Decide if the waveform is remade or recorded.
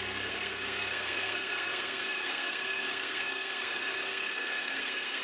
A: remade